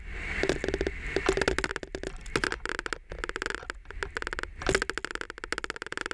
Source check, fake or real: real